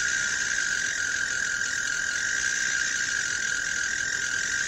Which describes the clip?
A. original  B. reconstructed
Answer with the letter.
A